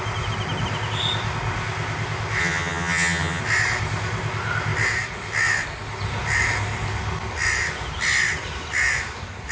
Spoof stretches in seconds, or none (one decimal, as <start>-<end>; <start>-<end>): 2.4-3.4